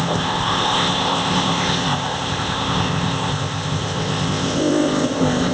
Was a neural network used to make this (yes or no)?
yes